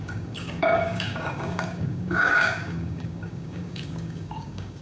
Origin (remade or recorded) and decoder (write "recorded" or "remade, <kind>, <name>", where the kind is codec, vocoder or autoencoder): remade, codec, DAC